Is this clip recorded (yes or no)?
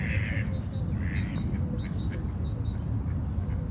yes